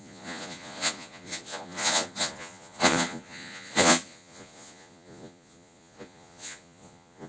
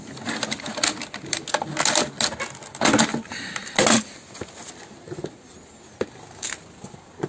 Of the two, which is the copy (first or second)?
first